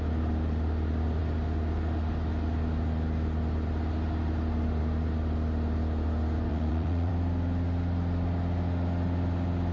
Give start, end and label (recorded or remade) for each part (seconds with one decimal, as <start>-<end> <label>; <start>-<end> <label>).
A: 0.0-6.5 recorded; 6.5-7.1 remade; 7.1-9.7 recorded